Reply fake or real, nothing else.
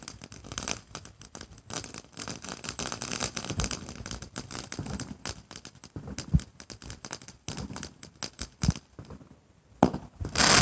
real